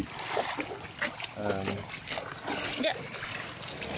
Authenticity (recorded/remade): recorded